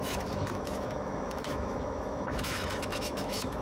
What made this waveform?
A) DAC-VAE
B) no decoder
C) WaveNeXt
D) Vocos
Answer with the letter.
A